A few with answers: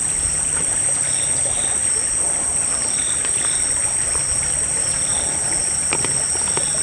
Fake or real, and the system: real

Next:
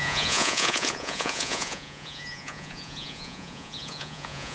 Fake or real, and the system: fake, vocoder, Vocos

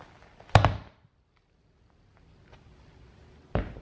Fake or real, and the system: real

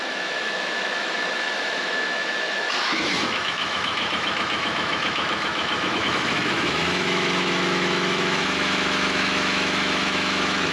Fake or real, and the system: fake, autoencoder, DAC-VAE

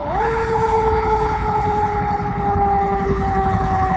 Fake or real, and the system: fake, codec, HILCodec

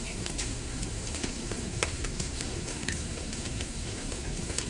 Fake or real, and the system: fake, codec, SNAC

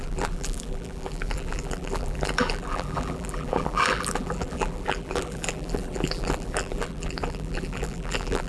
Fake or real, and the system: fake, vocoder, BigVGAN v2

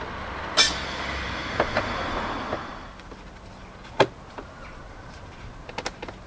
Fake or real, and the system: real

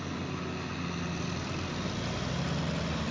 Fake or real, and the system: real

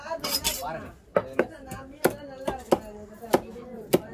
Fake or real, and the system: real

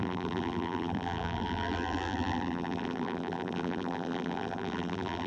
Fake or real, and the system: fake, vocoder, BigVGAN v2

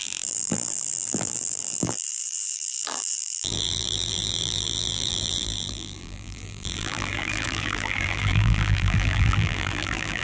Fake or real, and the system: fake, vocoder, BigVGAN v2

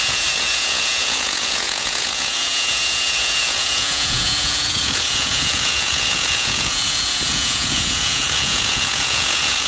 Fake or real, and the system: fake, vocoder, Vocos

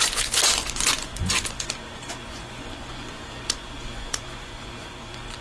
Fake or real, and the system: fake, vocoder, Vocos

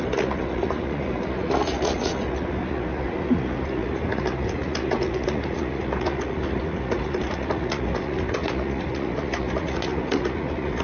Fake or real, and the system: fake, vocoder, Vocos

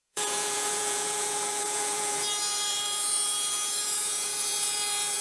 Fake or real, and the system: fake, vocoder, Vocos